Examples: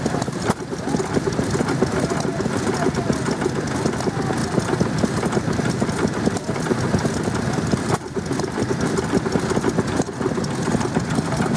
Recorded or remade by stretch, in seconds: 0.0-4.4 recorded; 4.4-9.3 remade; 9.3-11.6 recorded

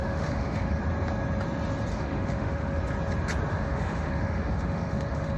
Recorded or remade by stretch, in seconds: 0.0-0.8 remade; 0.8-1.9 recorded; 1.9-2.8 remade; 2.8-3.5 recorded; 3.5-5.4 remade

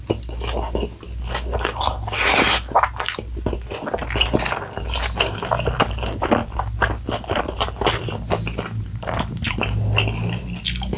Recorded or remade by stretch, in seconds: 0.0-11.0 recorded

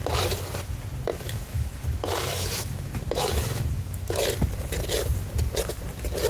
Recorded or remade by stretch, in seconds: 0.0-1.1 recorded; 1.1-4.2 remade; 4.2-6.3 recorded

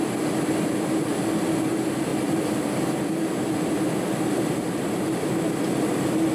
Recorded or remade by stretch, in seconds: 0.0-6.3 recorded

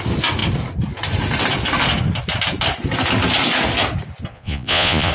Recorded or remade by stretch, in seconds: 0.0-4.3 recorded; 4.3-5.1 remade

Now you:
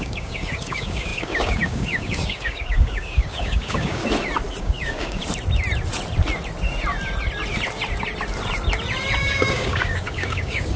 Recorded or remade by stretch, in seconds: 0.0-4.0 remade; 4.0-4.6 recorded; 4.6-5.2 remade; 5.2-9.3 recorded; 9.3-10.8 remade

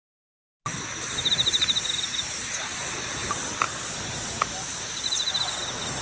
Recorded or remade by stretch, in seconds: 0.0-0.7 recorded; 0.7-1.3 remade; 1.3-6.0 recorded